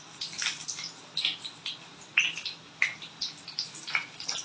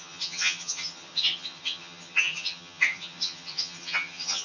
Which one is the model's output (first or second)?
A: second